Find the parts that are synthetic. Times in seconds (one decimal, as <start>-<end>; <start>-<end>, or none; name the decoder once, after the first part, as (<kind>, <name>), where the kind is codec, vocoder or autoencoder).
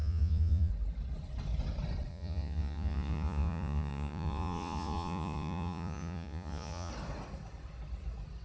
0.0-0.7 (vocoder, Vocos); 2.1-6.9